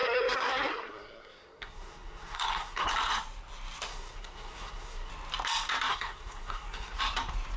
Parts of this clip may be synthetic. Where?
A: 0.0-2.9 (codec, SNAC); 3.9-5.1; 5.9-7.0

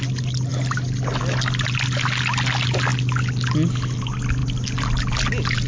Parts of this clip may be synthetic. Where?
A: none

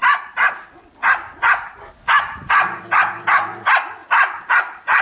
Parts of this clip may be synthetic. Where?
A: none

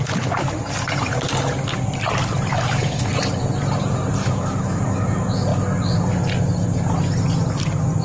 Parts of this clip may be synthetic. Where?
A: 2.5-3.1 (autoencoder, DAC-VAE); 4.2-4.8

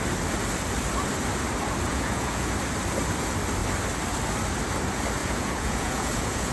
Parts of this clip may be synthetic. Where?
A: 1.9-2.5 (vocoder, Vocos); 5.2-6.5

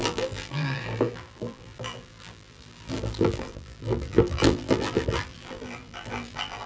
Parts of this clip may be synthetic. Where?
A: 0.0-6.7 (vocoder, BigVGAN v2)

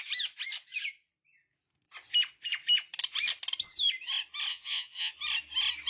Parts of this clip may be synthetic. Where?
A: 4.5-5.1 (vocoder, Vocos)